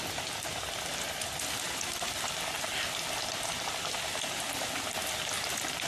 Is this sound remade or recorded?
recorded